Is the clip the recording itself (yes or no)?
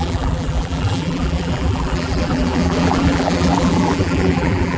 no